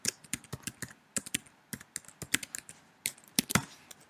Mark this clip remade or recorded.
recorded